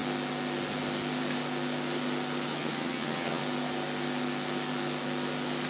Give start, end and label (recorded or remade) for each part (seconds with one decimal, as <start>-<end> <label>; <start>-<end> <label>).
0.0-2.5 recorded; 2.5-3.4 remade; 3.4-5.7 recorded

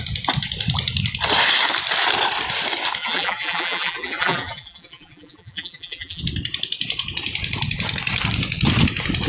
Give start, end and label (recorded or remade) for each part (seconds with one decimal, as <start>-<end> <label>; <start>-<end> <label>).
0.0-3.0 recorded; 3.0-6.2 remade; 6.2-9.3 recorded

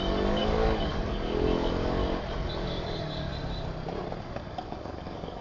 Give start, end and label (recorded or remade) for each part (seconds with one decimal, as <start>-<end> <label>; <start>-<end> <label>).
0.0-2.0 remade; 2.0-2.5 recorded; 2.5-3.3 remade; 3.3-4.2 recorded; 4.2-5.4 remade

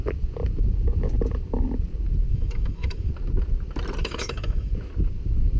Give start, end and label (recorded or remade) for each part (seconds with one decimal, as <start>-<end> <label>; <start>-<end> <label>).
0.0-2.3 recorded; 2.3-3.1 remade; 3.1-4.0 recorded; 4.0-4.7 remade; 4.7-5.6 recorded

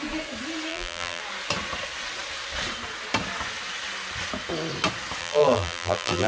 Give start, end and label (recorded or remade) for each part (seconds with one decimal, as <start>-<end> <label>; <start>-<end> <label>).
0.0-0.7 recorded; 0.7-1.2 remade; 1.2-5.2 recorded; 5.2-6.3 remade

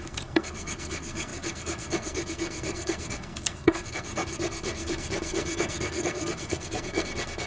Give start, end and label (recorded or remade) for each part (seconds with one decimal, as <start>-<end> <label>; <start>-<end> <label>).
0.0-7.5 remade

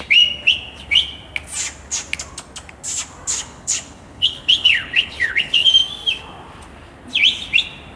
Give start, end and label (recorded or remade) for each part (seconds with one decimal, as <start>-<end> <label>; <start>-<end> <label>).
0.0-3.3 recorded; 3.3-5.7 remade; 5.7-8.0 recorded

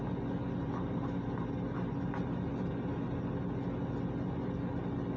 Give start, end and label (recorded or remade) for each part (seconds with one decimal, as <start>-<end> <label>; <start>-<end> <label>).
0.0-5.2 recorded